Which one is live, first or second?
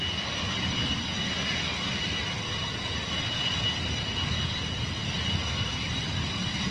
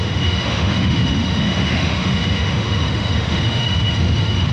first